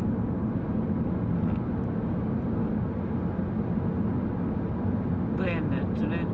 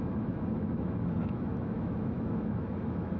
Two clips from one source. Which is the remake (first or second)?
second